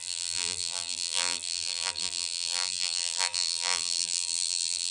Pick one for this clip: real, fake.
fake